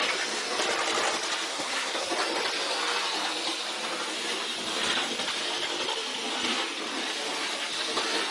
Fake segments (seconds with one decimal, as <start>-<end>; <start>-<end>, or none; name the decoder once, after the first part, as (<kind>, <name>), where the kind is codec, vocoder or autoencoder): 1.5-2.1 (codec, SNAC)